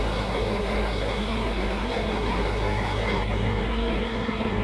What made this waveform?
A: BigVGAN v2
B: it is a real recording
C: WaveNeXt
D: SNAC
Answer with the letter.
D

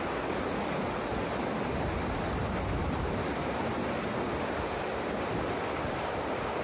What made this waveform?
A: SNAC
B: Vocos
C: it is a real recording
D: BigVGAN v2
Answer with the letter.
C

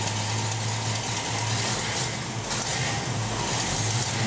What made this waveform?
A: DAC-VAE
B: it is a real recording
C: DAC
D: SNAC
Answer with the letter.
B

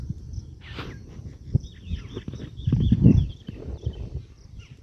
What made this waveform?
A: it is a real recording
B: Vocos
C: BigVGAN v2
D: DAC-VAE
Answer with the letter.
C